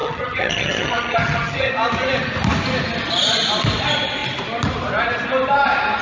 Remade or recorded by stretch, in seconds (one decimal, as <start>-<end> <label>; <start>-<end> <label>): 0.0-1.7 remade; 1.7-6.0 recorded